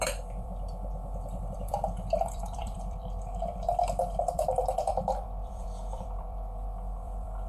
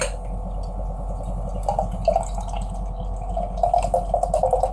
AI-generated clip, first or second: first